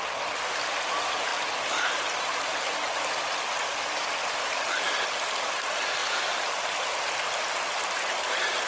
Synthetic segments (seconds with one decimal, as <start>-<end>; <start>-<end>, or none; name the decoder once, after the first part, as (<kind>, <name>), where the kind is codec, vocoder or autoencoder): none